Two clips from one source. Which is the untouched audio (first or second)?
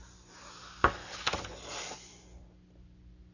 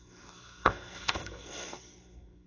first